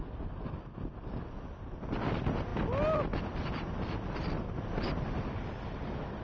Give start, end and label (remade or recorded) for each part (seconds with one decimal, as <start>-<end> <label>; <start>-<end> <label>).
0.0-6.2 recorded